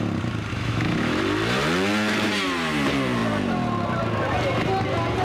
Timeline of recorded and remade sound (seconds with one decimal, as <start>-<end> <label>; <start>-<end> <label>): 0.0-0.5 recorded; 0.5-1.2 remade; 1.2-5.2 recorded